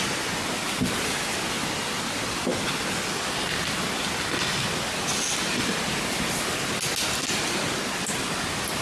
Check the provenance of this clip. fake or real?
real